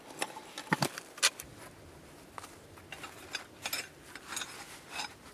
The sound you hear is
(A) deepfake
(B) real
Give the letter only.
B